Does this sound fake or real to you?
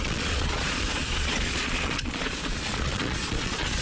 fake